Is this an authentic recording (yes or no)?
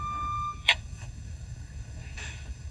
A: no